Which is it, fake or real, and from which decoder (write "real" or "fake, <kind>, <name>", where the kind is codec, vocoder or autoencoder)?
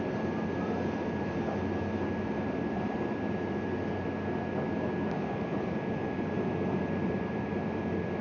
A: real